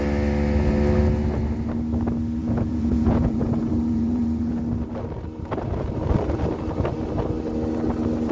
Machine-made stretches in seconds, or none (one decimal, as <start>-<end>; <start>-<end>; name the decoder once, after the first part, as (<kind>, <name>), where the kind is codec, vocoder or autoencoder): 2.4-4.6 (vocoder, Vocos)